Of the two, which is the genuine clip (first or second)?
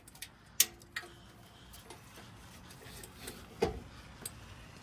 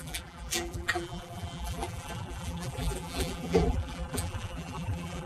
first